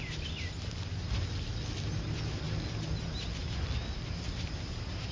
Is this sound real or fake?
real